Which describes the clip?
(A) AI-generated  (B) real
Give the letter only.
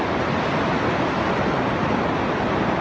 B